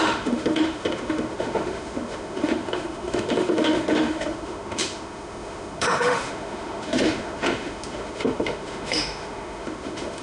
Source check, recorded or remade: remade